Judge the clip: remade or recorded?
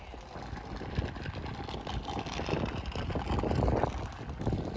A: recorded